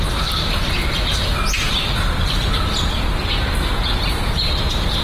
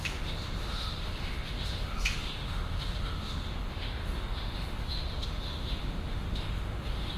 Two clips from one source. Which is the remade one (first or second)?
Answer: second